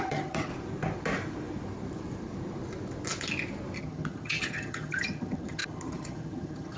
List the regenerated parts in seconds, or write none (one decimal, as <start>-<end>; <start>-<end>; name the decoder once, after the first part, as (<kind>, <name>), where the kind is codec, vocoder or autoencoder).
0.0-0.5 (vocoder, HiFi-GAN); 3.8-6.8